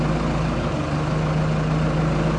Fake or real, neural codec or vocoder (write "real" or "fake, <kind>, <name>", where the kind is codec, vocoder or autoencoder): real